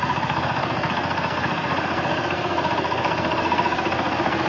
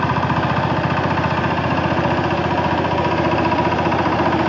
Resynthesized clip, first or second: first